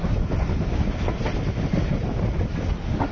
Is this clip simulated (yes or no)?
no